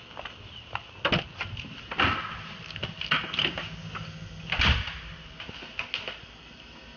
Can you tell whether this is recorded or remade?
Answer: recorded